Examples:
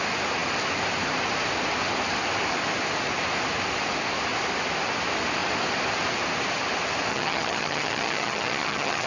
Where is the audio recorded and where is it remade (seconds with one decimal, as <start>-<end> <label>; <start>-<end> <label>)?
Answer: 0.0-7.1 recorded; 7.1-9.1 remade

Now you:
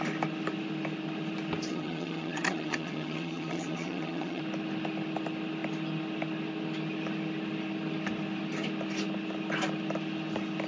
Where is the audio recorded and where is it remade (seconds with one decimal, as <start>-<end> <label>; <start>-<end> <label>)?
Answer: 0.0-1.7 recorded; 1.7-4.4 remade; 4.4-10.7 recorded

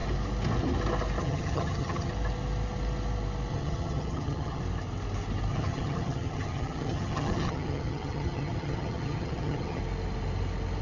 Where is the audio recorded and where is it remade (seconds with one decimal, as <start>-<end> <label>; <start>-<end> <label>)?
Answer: 0.0-1.2 recorded; 1.2-2.1 remade; 2.1-3.5 recorded; 3.5-4.6 remade; 4.6-5.5 recorded; 5.5-9.8 remade; 9.8-10.8 recorded

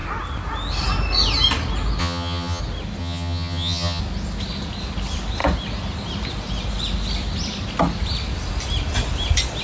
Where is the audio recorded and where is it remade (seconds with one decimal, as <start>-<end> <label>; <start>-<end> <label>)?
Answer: 0.0-2.0 recorded; 2.0-2.6 remade; 2.6-3.0 recorded; 3.0-4.0 remade; 4.0-9.6 recorded

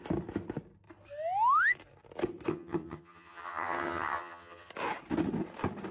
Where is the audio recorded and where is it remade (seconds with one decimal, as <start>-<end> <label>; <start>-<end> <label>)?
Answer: 0.0-2.5 recorded; 2.5-4.7 remade; 4.7-5.9 recorded

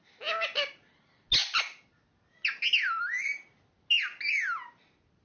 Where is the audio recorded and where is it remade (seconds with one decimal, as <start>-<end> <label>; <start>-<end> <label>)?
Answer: 0.0-5.2 recorded

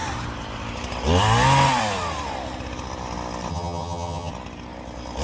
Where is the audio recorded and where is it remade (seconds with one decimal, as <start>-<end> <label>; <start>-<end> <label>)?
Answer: 0.0-3.5 recorded; 3.5-4.3 remade; 4.3-5.2 recorded